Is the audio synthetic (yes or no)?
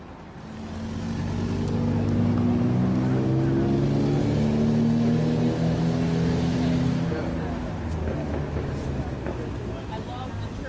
no